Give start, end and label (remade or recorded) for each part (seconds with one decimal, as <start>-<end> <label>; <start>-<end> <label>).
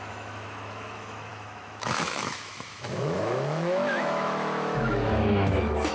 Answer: 0.0-5.9 remade